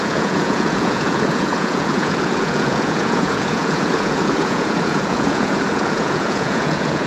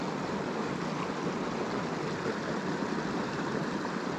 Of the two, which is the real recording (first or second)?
second